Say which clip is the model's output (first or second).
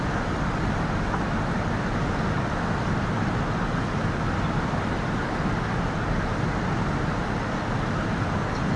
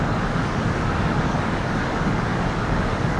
second